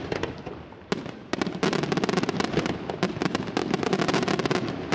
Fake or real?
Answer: real